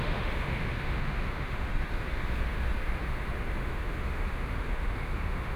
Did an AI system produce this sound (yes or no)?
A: yes